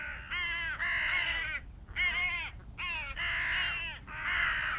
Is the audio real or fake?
real